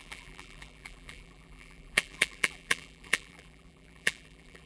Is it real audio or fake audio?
fake